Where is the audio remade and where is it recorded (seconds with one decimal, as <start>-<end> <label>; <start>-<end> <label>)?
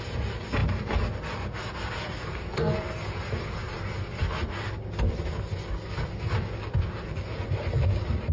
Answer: 0.0-8.3 recorded